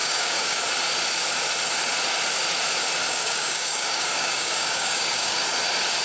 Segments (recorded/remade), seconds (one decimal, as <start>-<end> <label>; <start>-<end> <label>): 0.0-0.6 remade; 0.6-3.1 recorded; 3.1-5.4 remade; 5.4-6.0 recorded